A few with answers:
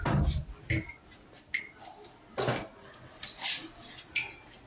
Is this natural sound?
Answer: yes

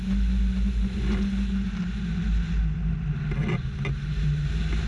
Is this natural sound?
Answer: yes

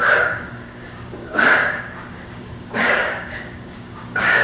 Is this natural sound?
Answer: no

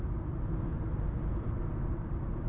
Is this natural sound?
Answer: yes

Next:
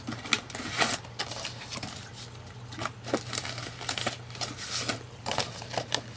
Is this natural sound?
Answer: yes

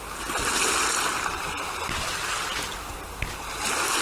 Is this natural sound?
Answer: yes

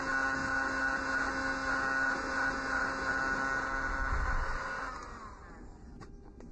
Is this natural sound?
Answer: yes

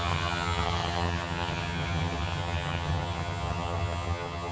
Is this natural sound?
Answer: no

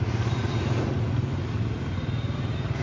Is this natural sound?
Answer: yes